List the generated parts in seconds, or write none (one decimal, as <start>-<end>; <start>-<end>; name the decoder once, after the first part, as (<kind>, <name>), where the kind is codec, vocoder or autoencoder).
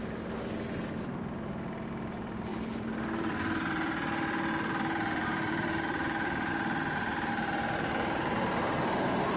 2.5-6.5 (vocoder, BigVGAN v2)